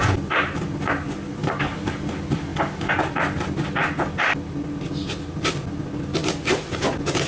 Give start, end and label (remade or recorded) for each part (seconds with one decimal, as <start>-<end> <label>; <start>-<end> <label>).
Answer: 0.0-1.4 recorded; 1.4-1.9 remade; 1.9-2.5 recorded; 2.5-3.0 remade; 3.0-7.3 recorded